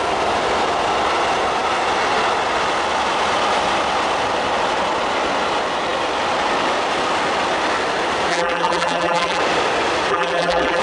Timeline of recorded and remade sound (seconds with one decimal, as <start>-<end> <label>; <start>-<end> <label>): 0.0-8.3 recorded; 8.3-9.4 remade; 9.4-10.1 recorded; 10.1-10.8 remade

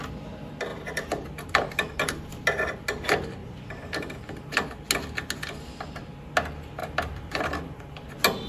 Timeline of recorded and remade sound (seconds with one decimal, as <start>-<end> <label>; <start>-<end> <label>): 0.0-0.7 recorded; 0.7-2.3 remade; 2.3-3.4 recorded; 3.4-4.7 remade; 4.7-6.8 recorded; 6.8-7.9 remade; 7.9-8.5 recorded

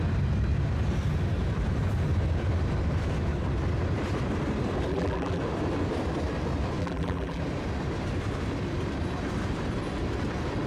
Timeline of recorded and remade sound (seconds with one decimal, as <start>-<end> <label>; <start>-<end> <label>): 0.0-4.9 recorded; 4.9-5.4 remade; 5.4-6.8 recorded; 6.8-7.4 remade; 7.4-10.7 recorded

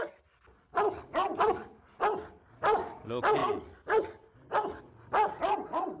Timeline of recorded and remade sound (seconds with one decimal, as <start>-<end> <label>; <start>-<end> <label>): 0.0-6.0 recorded

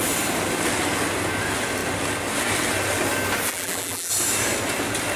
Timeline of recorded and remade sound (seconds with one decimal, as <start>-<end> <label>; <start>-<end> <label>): 0.0-3.5 recorded; 3.5-4.1 remade; 4.1-5.2 recorded

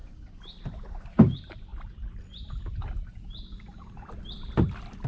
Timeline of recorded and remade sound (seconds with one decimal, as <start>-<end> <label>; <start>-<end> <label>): 0.0-5.1 recorded

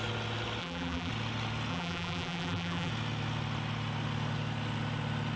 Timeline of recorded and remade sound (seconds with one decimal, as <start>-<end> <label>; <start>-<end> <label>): 0.0-0.6 recorded; 0.6-1.1 remade; 1.1-1.7 recorded; 1.7-2.9 remade; 2.9-5.4 recorded

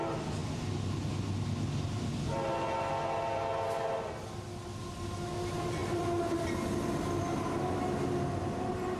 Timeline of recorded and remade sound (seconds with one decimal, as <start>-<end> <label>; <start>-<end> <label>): 0.0-5.8 recorded; 5.8-6.5 remade; 6.5-9.0 recorded